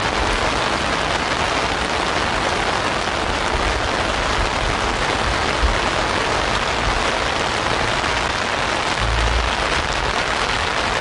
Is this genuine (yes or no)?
yes